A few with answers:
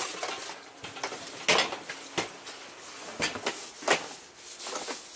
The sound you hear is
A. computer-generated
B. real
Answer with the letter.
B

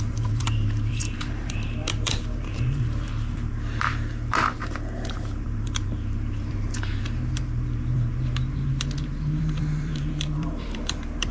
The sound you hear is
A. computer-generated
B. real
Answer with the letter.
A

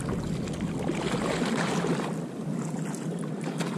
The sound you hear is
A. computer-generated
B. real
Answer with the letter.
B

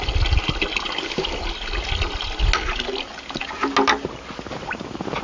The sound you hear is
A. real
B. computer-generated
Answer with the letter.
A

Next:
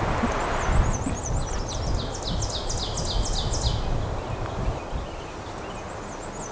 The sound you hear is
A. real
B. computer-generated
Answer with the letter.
B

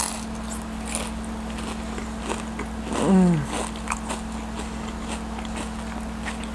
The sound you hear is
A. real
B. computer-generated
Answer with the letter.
A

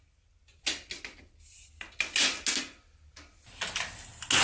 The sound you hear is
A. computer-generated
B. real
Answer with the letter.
B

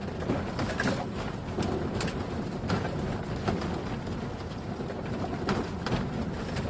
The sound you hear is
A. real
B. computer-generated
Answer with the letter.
A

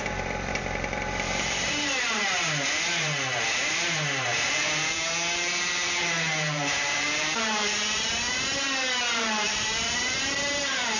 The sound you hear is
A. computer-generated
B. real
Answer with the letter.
A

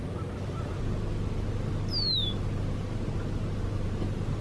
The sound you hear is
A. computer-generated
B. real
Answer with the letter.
B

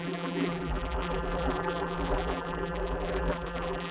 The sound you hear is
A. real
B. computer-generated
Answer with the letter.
B